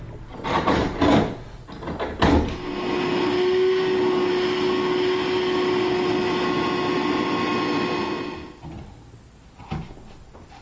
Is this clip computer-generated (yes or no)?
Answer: no